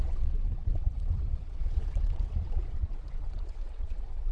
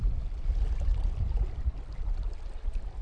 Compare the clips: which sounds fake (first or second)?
first